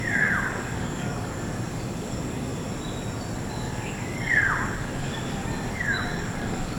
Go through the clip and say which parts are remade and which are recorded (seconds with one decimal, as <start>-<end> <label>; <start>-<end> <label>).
0.0-2.5 remade; 2.5-3.5 recorded; 3.5-5.1 remade; 5.1-5.7 recorded; 5.7-6.8 remade